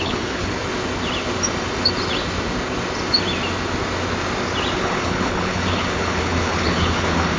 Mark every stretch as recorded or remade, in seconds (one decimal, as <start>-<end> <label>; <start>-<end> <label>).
0.0-0.6 remade; 0.6-4.8 recorded; 4.8-7.4 remade